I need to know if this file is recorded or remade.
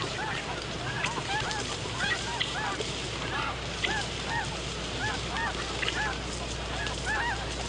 recorded